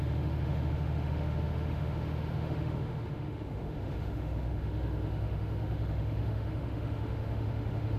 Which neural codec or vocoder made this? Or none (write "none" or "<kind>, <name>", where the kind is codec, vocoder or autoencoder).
autoencoder, DAC-VAE